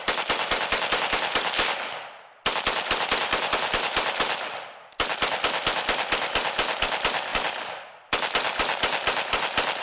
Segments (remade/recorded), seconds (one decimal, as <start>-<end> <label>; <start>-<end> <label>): 0.0-9.8 recorded